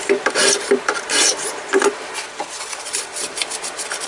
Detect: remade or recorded remade